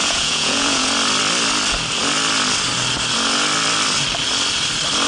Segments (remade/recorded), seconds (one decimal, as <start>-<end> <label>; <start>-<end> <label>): 0.0-0.9 remade; 0.9-5.1 recorded